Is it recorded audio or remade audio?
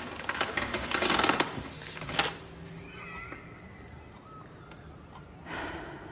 recorded